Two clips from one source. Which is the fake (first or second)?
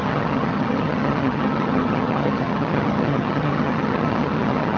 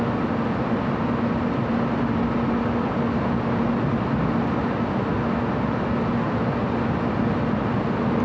first